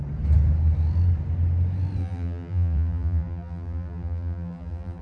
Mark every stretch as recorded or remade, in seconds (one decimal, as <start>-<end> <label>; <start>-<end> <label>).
0.0-2.0 recorded; 2.0-5.0 remade